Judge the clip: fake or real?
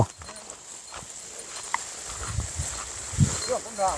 real